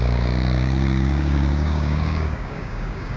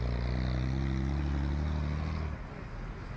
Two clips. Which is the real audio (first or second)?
second